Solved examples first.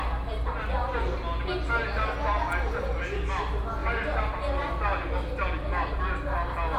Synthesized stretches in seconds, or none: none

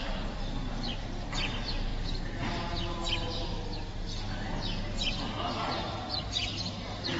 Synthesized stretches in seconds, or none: 0.0-1.9; 5.5-6.1